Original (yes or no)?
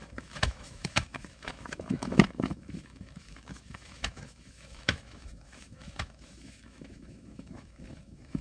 no